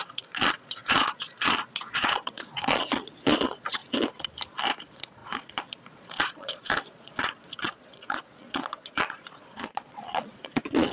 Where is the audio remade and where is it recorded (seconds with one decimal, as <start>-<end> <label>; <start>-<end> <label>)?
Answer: 0.0-3.8 remade; 3.8-4.8 recorded; 4.8-10.9 remade

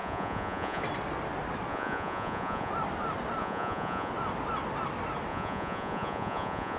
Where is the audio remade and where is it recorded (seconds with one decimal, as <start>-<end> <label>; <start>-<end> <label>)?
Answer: 0.0-0.8 remade; 0.8-1.7 recorded; 1.7-2.7 remade; 2.7-3.4 recorded; 3.4-4.1 remade; 4.1-5.3 recorded; 5.3-6.8 remade

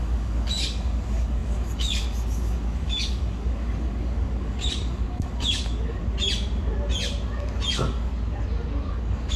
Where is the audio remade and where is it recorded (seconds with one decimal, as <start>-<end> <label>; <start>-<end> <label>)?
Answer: 0.0-6.0 remade; 6.0-7.7 recorded; 7.7-8.1 remade; 8.1-8.9 recorded; 8.9-9.4 remade

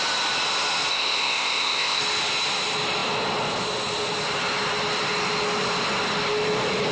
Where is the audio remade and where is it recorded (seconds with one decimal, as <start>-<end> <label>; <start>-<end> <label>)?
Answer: 0.0-0.9 recorded; 0.9-2.0 remade; 2.0-6.9 recorded

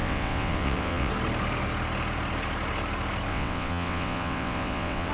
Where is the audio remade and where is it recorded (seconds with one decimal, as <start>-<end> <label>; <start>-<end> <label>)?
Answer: 0.0-1.1 remade; 1.1-3.3 recorded; 3.3-5.1 remade